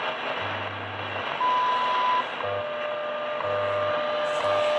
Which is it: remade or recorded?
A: recorded